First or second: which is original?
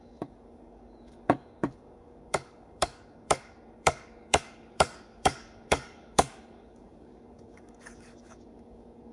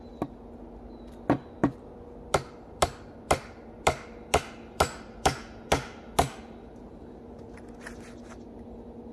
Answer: second